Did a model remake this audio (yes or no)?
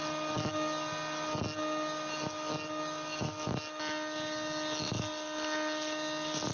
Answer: no